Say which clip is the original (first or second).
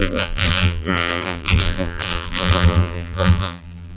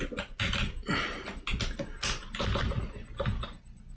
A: second